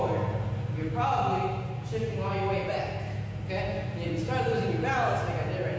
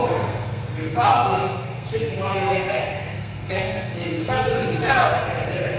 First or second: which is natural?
first